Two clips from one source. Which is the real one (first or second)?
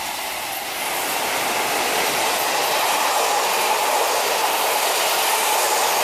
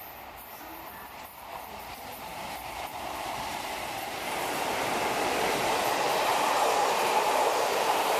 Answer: first